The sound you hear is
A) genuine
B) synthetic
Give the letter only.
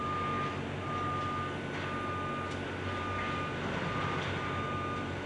A